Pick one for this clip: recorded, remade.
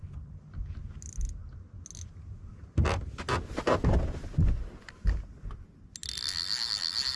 recorded